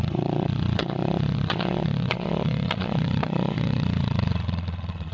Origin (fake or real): fake